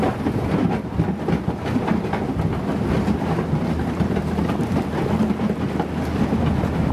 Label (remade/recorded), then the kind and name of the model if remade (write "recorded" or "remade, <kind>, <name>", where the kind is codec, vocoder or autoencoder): recorded